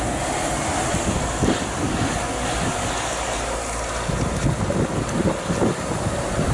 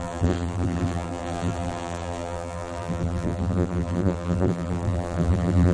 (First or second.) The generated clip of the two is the second